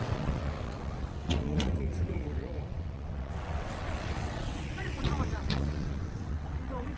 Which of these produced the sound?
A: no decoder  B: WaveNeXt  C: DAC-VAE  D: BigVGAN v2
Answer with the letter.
B